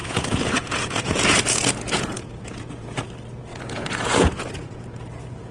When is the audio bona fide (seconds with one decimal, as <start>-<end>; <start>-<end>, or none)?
3.0-3.5; 4.8-5.5